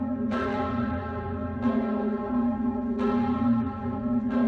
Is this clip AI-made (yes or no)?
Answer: yes